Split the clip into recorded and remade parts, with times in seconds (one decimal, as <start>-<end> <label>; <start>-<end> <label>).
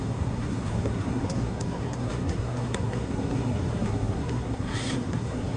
0.0-5.6 remade